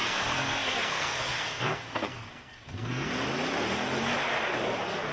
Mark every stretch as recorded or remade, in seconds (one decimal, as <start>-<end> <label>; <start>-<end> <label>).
0.0-3.1 remade; 3.1-5.1 recorded